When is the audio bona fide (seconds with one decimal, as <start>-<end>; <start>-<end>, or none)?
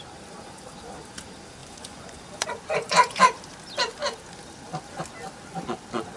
0.0-1.6; 3.2-6.2